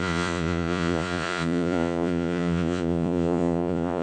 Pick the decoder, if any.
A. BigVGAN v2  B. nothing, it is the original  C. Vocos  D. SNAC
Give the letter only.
C